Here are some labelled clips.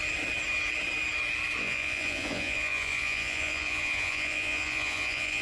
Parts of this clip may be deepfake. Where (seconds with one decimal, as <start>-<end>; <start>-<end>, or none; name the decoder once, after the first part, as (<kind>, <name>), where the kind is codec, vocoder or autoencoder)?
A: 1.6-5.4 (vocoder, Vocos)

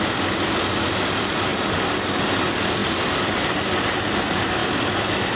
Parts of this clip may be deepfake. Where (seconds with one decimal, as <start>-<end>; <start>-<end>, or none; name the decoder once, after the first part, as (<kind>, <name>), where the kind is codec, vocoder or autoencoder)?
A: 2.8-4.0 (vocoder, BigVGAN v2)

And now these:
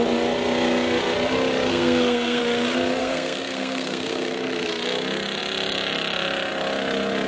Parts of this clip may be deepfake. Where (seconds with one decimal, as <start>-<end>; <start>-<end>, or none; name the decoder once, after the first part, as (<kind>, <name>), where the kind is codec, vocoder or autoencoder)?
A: 1.7-2.4 (codec, SNAC); 3.0-4.7

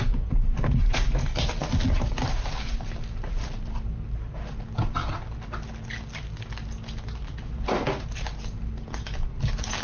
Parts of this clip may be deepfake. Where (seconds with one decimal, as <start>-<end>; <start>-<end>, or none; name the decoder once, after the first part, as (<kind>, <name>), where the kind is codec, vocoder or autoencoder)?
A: 0.0-5.0 (vocoder, BigVGAN v2); 7.0-9.8

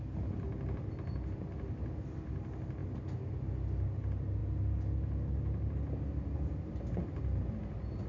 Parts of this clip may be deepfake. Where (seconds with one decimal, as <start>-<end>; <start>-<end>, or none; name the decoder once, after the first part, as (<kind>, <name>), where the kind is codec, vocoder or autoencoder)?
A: none

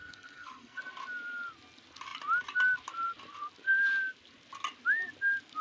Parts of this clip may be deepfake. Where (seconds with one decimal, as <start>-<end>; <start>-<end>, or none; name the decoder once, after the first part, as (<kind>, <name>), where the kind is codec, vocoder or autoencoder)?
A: 0.0-0.8 (codec, SNAC)

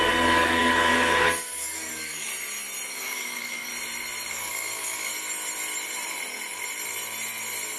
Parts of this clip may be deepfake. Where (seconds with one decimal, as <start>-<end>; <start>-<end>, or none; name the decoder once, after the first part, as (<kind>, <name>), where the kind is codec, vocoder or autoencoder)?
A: 0.0-2.3 (codec, DAC); 2.9-3.7; 4.3-5.1

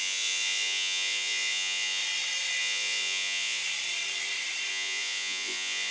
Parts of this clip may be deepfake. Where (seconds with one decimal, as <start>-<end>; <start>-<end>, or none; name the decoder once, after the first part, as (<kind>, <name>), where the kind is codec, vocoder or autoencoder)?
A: 0.0-2.0 (vocoder, Vocos); 2.6-3.6; 4.7-5.9